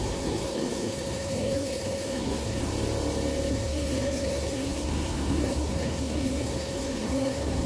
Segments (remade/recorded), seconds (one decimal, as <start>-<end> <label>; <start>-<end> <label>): 0.0-2.7 remade; 2.7-3.5 recorded; 3.5-7.7 remade